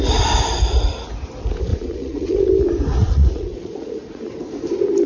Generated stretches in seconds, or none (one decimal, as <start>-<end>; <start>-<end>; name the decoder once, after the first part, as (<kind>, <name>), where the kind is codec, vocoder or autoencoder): 1.7-2.5 (vocoder, Vocos); 3.0-4.2